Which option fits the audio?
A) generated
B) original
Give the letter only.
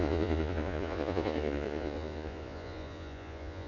A